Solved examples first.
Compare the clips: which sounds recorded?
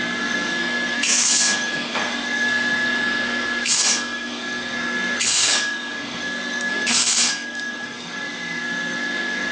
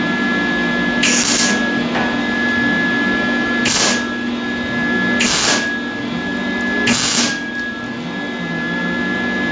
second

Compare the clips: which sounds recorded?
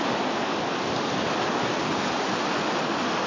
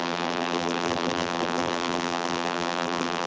first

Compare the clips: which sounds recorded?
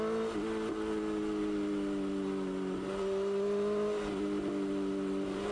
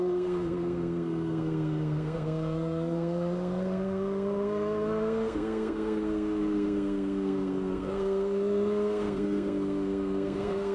first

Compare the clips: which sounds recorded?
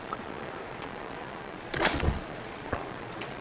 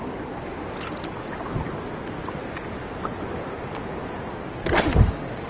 second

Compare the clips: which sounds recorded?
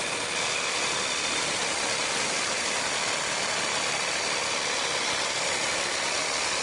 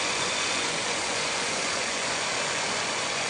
first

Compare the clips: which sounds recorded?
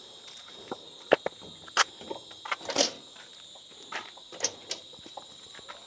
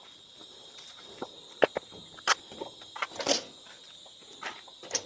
first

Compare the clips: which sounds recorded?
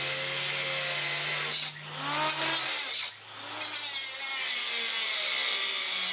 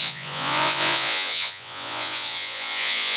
first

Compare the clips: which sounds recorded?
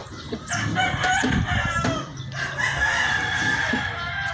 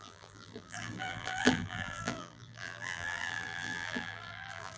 first